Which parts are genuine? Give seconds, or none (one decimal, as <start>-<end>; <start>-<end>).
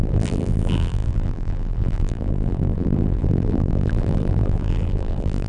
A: none